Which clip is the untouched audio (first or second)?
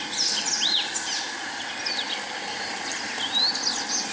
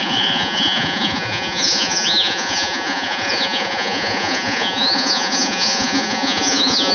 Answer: first